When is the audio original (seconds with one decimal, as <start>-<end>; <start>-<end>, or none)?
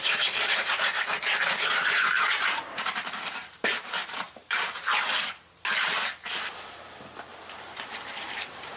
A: 0.9-1.6; 4.9-8.1